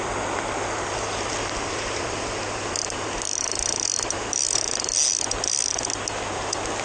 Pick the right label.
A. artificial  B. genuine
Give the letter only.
B